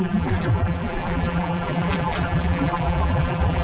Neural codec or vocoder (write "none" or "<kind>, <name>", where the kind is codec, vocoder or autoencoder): vocoder, BigVGAN v2